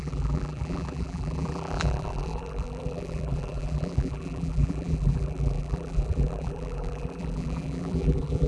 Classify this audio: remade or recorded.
remade